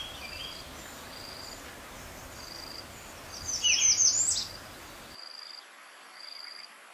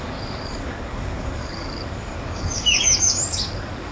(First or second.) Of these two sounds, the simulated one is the second